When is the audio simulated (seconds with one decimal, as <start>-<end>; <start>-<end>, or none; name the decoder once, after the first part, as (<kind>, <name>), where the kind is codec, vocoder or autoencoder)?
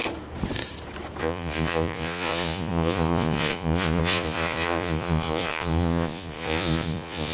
1.2-7.3 (vocoder, Vocos)